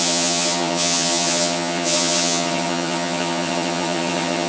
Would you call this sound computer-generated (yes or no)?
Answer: yes